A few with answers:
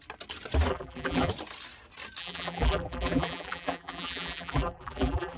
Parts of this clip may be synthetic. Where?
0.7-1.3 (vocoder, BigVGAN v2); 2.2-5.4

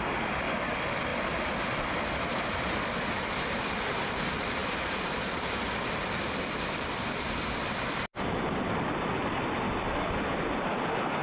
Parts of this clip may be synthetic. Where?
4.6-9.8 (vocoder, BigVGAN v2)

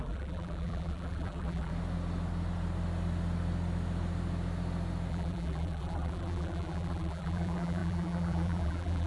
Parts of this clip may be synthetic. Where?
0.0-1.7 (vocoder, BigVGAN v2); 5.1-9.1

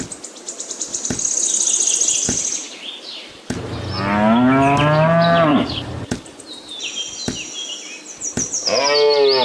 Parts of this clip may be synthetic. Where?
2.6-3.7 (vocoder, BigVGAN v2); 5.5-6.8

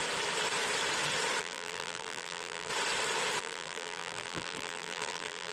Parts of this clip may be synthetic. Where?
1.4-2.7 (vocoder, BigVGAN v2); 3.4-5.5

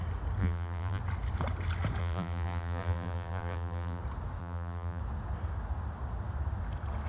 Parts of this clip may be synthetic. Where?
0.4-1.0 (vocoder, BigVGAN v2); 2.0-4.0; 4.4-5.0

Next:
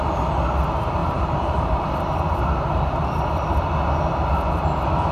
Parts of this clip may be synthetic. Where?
1.0-2.8 (vocoder, BigVGAN v2)

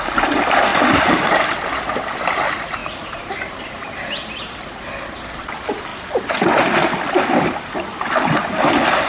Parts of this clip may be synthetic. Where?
0.0-5.9 (vocoder, BigVGAN v2); 8.6-9.1